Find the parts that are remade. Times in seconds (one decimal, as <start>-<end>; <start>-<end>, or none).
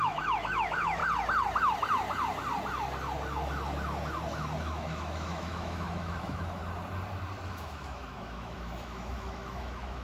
0.0-1.0; 4.6-6.6; 7.5-10.0